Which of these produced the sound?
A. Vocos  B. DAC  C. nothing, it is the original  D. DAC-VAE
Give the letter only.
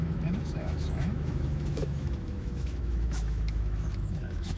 D